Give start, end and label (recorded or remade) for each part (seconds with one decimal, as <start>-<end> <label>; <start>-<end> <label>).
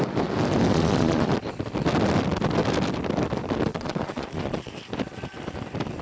0.0-0.7 recorded; 0.7-1.3 remade; 1.3-3.7 recorded; 3.7-4.7 remade; 4.7-6.0 recorded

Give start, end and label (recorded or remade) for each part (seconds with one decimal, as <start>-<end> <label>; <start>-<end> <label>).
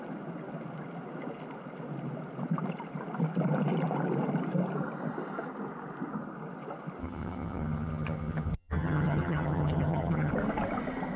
0.0-7.0 recorded; 7.0-10.3 remade; 10.3-11.2 recorded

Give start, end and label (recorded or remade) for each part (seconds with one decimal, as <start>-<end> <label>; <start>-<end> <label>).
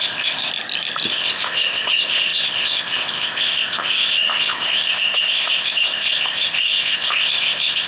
0.0-0.5 remade; 0.5-1.1 recorded; 1.1-7.9 remade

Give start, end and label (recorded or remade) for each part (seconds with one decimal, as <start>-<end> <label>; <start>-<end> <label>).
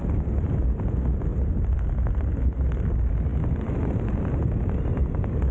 0.0-5.5 recorded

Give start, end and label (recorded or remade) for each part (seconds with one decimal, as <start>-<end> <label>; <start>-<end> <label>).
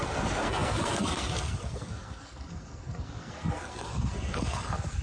0.0-5.0 remade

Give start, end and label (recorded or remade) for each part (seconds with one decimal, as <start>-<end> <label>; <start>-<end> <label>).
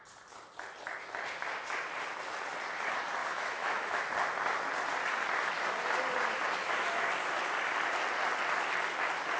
0.0-3.2 recorded; 3.2-4.0 remade; 4.0-6.6 recorded; 6.6-7.1 remade; 7.1-9.4 recorded